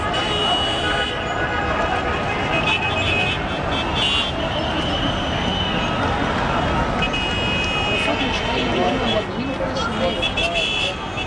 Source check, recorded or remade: recorded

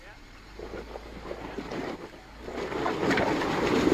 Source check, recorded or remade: recorded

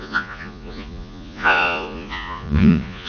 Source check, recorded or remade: remade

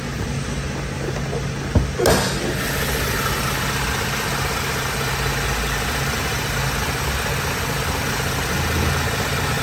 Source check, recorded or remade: recorded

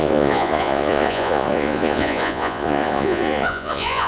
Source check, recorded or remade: remade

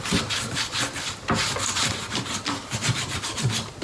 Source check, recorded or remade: recorded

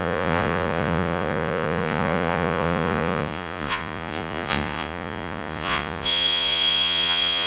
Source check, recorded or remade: remade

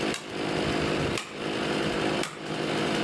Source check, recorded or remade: recorded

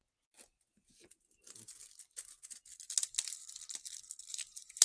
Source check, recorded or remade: recorded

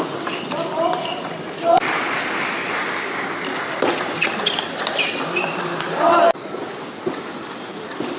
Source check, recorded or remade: recorded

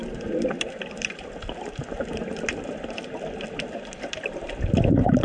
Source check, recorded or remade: recorded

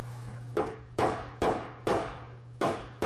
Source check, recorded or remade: remade